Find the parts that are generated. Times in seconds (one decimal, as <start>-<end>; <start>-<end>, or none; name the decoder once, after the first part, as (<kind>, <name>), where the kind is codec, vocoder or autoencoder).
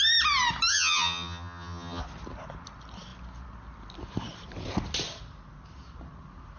0.7-2.0 (vocoder, HiFi-GAN)